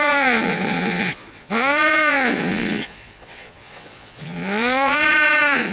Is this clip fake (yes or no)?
yes